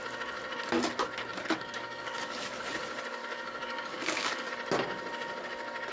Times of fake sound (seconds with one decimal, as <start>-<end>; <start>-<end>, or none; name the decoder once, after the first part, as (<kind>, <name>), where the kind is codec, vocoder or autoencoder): 1.3-2.6 (codec, DAC); 3.2-4.5